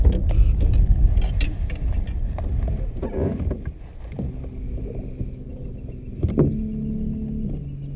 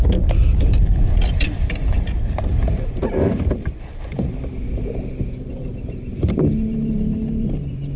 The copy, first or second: second